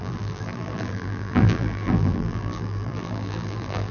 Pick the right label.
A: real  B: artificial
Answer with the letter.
B